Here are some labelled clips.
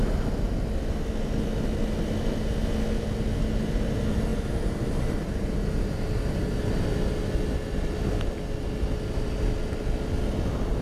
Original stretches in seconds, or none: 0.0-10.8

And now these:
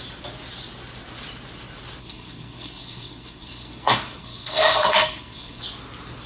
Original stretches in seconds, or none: 0.0-2.0; 5.6-6.3

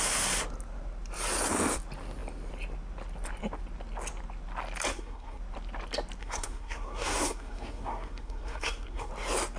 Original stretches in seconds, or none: 0.0-4.9; 5.4-6.2; 9.1-9.6

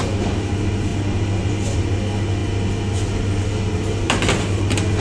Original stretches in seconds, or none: 0.0-5.0

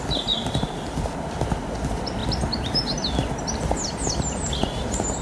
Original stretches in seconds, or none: 0.0-5.2

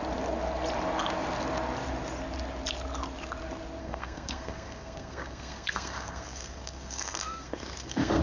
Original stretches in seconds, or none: 0.0-3.8

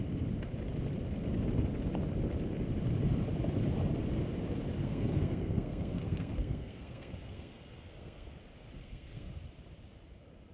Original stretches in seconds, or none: 0.0-4.8; 8.4-8.8; 9.3-10.5

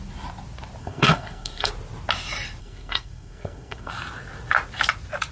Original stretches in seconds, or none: 0.0-0.8; 1.7-2.6; 3.9-5.3